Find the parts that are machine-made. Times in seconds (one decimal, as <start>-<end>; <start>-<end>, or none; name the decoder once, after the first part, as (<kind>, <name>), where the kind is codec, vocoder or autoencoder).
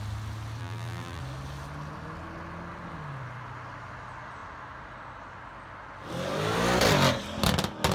0.6-1.2 (vocoder, BigVGAN v2)